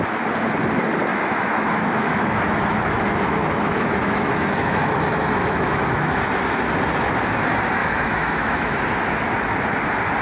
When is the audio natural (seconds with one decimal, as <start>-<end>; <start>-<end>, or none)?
0.0-1.1; 6.2-7.8; 8.8-10.2